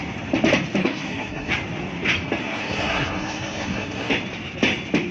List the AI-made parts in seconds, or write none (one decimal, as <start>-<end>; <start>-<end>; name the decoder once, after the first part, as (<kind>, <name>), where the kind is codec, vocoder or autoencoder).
0.8-1.5 (codec, SNAC); 2.4-4.1